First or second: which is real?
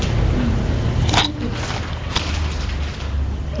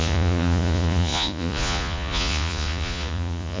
first